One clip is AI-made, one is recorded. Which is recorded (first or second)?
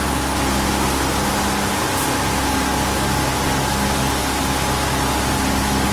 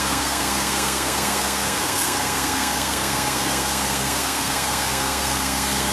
first